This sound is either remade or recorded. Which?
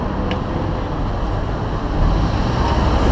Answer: recorded